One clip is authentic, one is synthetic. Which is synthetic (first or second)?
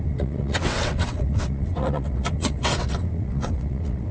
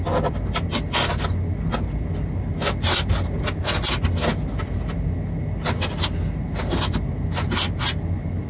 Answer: first